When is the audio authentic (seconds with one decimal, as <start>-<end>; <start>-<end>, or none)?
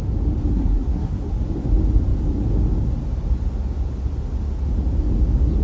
0.0-0.5; 1.4-5.6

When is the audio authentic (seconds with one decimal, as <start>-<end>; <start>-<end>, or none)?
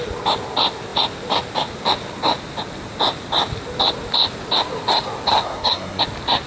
0.0-5.3; 6.0-6.5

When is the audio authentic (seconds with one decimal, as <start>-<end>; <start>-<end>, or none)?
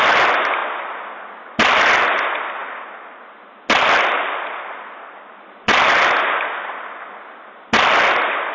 0.0-8.5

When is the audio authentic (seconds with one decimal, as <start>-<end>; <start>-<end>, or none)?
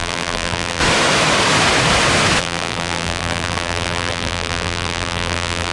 0.8-2.4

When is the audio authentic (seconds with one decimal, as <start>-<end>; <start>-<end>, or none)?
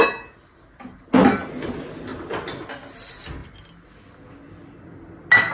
0.0-5.5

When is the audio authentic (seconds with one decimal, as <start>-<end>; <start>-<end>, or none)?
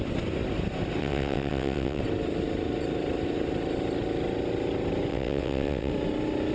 0.0-1.0; 2.0-5.1; 5.9-6.5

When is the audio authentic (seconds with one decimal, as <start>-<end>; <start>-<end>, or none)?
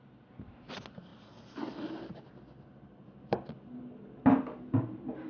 0.0-5.3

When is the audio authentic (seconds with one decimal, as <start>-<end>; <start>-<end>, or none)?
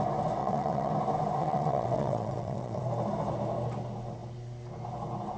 0.0-0.4; 0.9-1.4; 2.8-5.4